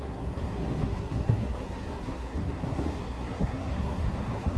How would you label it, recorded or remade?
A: remade